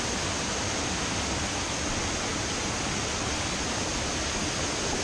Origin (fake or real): real